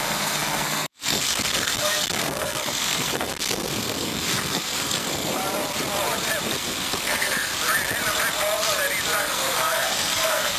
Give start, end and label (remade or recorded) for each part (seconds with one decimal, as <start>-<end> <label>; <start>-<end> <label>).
0.0-5.4 remade; 5.4-6.5 recorded; 6.5-7.5 remade; 7.5-9.2 recorded; 9.2-10.6 remade